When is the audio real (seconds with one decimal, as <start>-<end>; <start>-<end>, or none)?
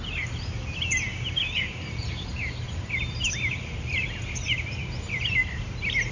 5.4-6.1